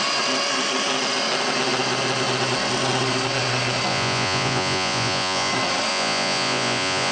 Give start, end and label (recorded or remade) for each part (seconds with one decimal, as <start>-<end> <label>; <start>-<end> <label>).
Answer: 0.0-3.9 recorded; 3.9-5.5 remade; 5.5-5.9 recorded; 5.9-7.1 remade